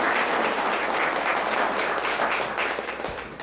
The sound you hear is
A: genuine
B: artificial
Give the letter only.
A